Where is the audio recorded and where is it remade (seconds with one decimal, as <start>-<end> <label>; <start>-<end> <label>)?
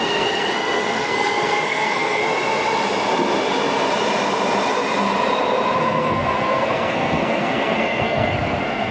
0.0-2.2 remade; 2.2-5.8 recorded; 5.8-8.9 remade